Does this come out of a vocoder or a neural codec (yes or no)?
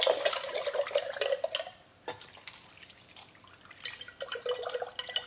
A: no